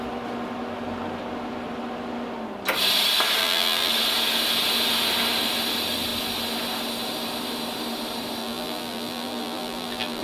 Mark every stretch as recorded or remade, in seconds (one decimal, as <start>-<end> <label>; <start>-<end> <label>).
0.0-3.4 recorded; 3.4-3.9 remade; 3.9-8.4 recorded; 8.4-10.2 remade